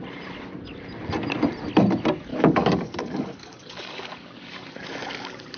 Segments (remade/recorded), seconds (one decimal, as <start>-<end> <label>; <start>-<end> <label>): 0.0-2.3 recorded; 2.3-5.6 remade